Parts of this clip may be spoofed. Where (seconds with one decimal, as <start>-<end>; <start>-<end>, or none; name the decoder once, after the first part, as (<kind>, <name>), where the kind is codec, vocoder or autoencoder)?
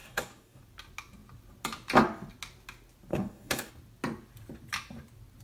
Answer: 0.0-0.6 (codec, DAC); 3.1-3.7